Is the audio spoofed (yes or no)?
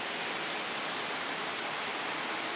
no